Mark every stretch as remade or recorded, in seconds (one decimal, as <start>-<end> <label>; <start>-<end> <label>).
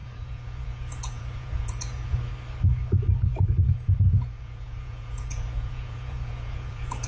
0.0-2.3 remade; 2.3-3.7 recorded; 3.7-7.1 remade